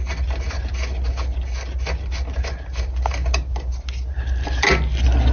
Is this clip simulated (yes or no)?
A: no